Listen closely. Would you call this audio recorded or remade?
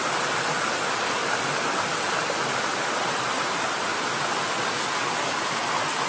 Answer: recorded